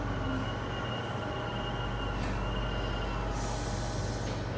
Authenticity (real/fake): real